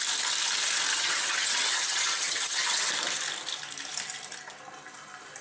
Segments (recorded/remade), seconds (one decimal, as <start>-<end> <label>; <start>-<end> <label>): 0.0-0.9 recorded; 0.9-2.9 remade; 2.9-5.4 recorded